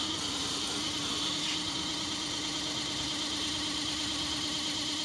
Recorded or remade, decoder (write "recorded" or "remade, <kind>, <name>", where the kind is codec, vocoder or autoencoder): recorded